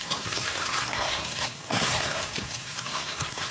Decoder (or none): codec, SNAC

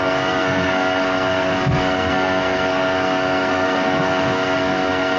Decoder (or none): codec, SNAC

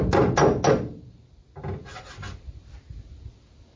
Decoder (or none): none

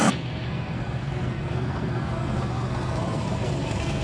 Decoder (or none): codec, SNAC